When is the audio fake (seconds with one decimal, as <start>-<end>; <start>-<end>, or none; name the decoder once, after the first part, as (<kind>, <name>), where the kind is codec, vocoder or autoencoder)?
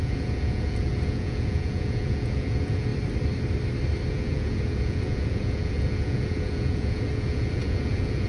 0.0-2.9 (vocoder, Vocos); 4.1-8.3